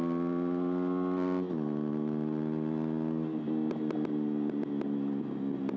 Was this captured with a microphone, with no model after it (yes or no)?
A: yes